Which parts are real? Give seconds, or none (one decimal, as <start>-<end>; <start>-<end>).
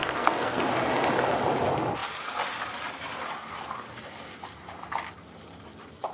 0.6-6.1